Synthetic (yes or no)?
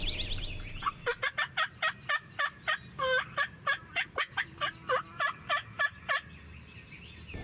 no